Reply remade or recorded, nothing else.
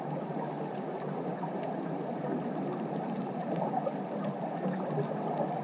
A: recorded